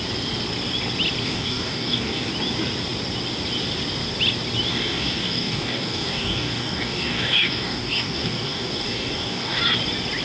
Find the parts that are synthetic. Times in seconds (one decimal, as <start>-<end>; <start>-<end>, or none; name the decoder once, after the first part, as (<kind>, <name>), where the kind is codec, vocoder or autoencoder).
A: 1.2-2.3 (codec, DAC); 4.7-9.6